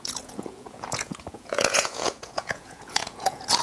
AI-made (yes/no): yes